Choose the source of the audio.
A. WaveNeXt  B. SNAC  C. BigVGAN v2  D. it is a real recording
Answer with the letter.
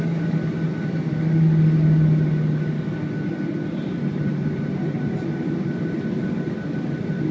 D